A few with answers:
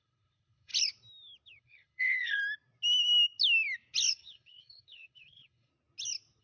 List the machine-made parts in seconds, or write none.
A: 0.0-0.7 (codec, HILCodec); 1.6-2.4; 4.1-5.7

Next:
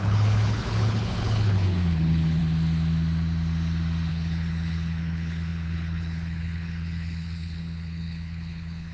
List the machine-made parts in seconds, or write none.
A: 0.0-2.4 (codec, HILCodec); 4.1-8.9

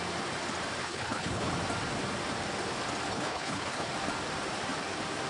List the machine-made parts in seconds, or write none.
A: 0.8-1.5 (codec, HILCodec); 3.1-3.9

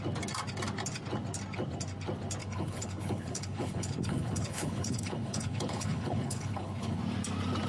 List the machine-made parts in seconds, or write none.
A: 2.4-7.0 (codec, HILCodec)

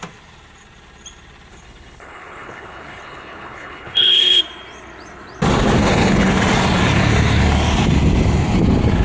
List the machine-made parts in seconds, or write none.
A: 1.5-4.4 (codec, HILCodec); 5.8-6.3